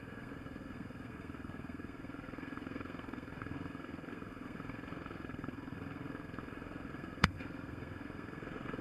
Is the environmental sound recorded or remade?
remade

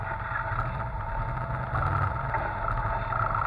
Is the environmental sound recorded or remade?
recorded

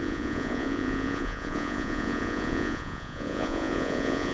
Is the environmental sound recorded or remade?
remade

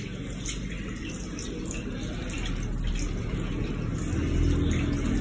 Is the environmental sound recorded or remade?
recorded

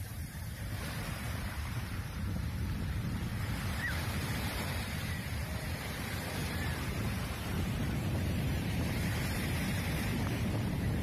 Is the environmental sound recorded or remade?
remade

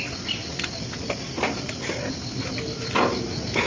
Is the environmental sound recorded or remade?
recorded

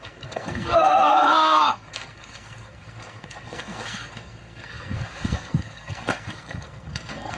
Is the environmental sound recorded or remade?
remade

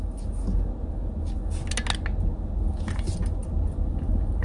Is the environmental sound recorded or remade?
recorded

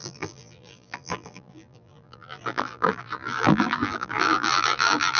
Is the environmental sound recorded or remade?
remade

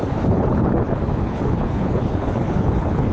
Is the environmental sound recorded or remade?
remade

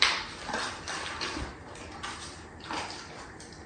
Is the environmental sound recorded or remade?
remade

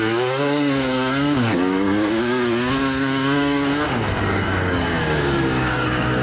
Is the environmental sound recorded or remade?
remade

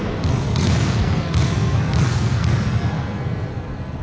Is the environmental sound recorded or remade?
remade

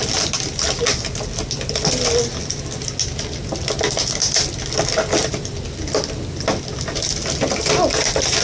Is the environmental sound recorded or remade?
recorded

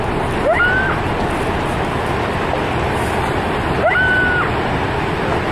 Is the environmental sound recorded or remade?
recorded